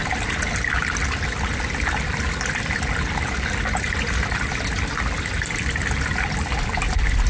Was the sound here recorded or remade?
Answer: recorded